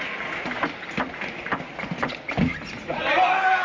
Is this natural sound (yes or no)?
yes